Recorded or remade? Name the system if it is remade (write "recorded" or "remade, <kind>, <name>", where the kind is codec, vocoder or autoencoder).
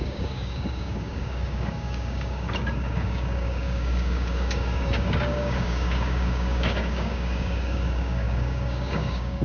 remade, codec, DAC